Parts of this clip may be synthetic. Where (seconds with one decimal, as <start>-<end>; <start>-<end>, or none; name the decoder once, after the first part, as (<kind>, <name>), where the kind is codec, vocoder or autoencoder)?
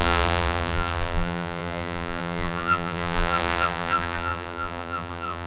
0.0-5.5 (vocoder, BigVGAN v2)